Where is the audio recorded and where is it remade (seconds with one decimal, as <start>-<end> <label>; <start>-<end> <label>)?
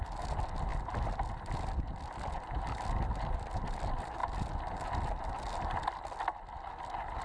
0.0-7.2 recorded